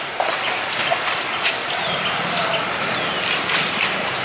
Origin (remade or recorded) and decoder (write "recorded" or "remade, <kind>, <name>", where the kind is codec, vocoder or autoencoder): recorded